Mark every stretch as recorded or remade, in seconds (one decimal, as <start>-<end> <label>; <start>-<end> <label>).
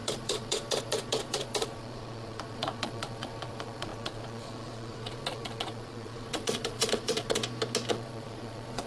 0.0-7.4 remade; 7.4-7.9 recorded; 7.9-8.9 remade